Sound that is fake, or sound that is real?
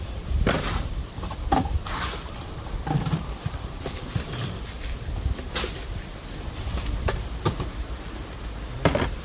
fake